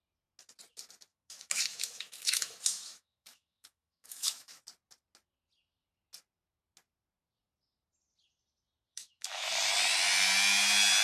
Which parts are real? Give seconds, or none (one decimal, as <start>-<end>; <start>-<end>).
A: 0.0-1.1; 4.6-8.9; 9.5-11.0